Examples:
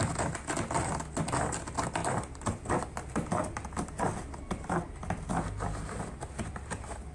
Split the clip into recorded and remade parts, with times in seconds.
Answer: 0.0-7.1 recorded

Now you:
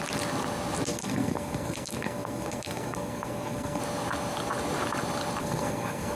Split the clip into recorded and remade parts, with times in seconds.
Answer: 0.0-0.9 recorded; 0.9-3.8 remade; 3.8-5.4 recorded; 5.4-6.2 remade

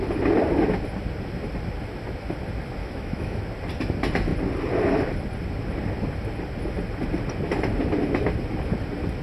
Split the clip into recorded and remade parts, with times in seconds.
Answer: 0.0-2.8 recorded; 2.8-3.4 remade; 3.4-9.2 recorded